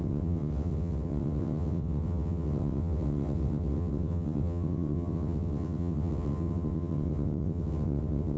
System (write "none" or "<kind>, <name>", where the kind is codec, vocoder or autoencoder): vocoder, WaveNeXt